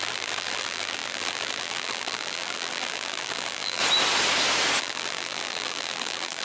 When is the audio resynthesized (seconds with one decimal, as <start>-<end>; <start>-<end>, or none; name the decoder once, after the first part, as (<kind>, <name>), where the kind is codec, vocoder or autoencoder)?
0.0-3.8 (vocoder, BigVGAN v2); 4.8-6.4